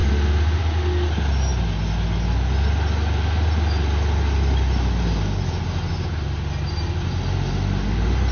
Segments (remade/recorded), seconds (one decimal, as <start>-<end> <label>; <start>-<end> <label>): 0.0-8.3 recorded